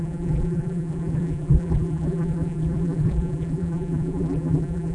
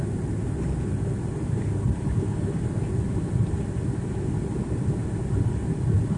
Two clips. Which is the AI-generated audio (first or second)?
first